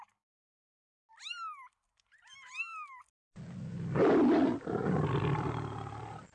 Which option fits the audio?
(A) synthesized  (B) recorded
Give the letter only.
B